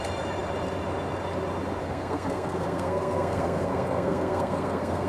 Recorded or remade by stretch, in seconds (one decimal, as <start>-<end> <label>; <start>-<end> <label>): 0.0-1.8 recorded; 1.8-5.1 remade